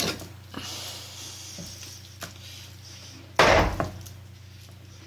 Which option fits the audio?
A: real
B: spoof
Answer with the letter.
A